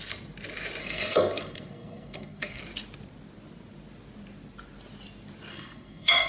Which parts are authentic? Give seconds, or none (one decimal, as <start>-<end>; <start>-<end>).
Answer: 0.0-0.8; 2.6-5.5